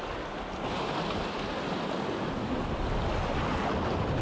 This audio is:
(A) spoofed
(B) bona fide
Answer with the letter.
B